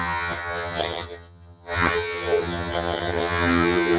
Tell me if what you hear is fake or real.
fake